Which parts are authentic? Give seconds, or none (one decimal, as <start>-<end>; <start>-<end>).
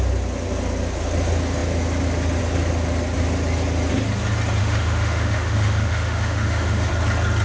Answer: 0.0-4.6; 6.9-7.4